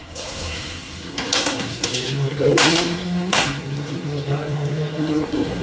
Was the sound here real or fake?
fake